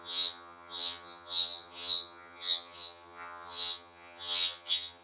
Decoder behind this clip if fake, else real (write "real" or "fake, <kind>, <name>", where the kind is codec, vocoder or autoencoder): fake, vocoder, HiFi-GAN